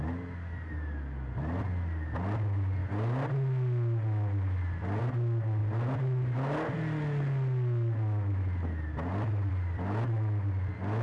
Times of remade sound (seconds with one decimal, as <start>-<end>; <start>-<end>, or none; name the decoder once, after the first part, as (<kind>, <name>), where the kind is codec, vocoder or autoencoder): none